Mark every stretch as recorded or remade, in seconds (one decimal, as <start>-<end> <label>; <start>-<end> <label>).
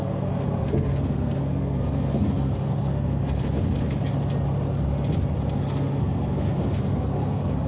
0.0-3.2 remade; 3.2-5.6 recorded; 5.6-7.7 remade